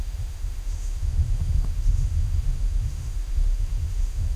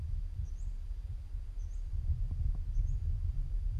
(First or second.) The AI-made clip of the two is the first